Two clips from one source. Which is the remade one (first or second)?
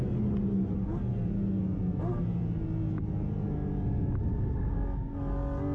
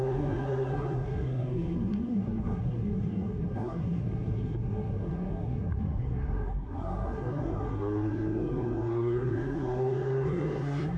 second